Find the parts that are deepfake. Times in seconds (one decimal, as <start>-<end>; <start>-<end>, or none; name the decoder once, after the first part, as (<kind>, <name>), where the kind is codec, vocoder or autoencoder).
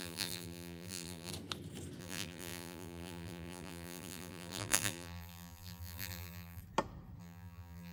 0.0-1.3 (vocoder, BigVGAN v2); 2.0-6.6; 7.2-7.9